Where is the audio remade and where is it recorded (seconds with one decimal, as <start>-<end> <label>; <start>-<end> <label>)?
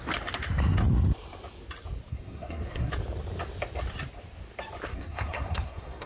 0.0-2.1 recorded; 2.1-2.9 remade; 2.9-4.9 recorded; 4.9-6.1 remade